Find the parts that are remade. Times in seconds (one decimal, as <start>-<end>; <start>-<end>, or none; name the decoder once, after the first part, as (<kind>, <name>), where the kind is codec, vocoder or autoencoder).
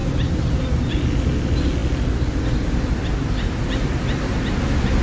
none